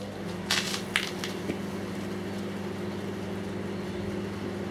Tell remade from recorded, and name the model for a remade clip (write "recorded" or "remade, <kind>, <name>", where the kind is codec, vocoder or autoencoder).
recorded